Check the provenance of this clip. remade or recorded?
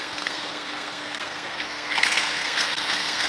remade